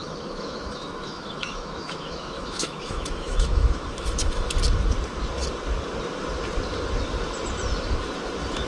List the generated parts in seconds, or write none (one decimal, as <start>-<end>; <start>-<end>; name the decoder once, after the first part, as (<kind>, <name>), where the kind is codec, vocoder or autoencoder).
0.0-4.5 (autoencoder, DAC-VAE)